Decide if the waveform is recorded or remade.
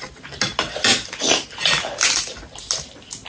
recorded